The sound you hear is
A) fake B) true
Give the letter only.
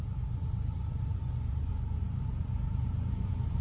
A